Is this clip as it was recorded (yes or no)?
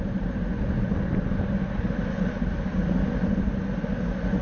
yes